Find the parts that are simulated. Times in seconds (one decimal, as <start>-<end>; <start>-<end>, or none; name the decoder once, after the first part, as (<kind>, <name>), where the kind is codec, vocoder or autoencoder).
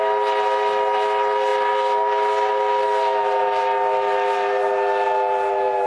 none